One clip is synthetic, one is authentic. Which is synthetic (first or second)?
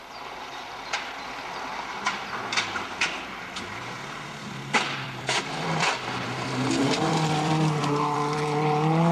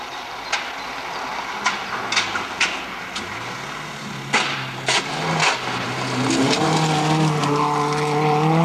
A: first